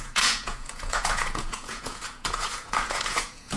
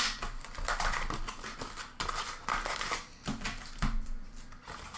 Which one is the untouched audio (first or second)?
second